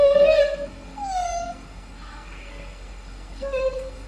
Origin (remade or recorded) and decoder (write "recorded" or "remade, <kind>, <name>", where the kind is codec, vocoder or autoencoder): remade, codec, SNAC